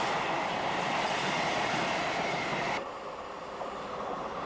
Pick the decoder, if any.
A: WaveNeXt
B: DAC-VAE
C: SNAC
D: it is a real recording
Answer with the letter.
D